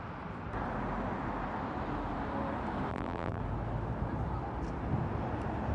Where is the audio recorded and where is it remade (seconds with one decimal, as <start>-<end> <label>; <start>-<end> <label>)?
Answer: 0.0-2.9 recorded; 2.9-3.4 remade; 3.4-5.7 recorded